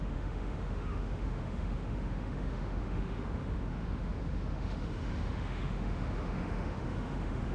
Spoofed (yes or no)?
yes